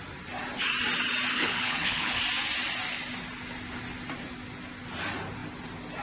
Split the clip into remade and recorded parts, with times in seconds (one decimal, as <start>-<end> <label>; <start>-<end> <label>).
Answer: 0.0-1.3 recorded; 1.3-2.2 remade; 2.2-6.0 recorded